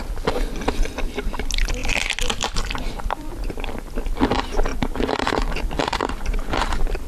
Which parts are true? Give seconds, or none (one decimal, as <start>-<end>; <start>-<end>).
0.0-4.7